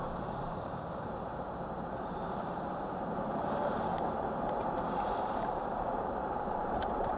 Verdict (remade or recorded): remade